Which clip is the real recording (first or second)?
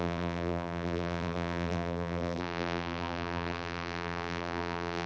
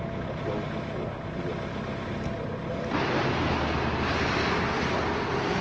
second